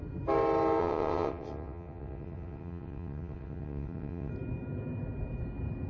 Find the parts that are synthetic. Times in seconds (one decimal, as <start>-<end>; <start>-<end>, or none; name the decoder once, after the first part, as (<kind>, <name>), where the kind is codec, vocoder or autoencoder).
0.8-4.3 (vocoder, WaveNeXt)